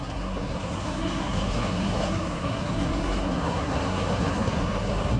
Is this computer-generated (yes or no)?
yes